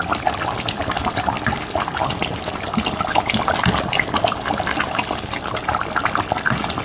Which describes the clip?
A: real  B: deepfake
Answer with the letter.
A